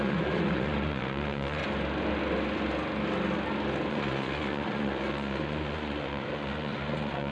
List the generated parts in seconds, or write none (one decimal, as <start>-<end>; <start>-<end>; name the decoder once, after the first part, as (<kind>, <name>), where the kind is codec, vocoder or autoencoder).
0.0-1.6 (vocoder, Vocos); 3.9-7.3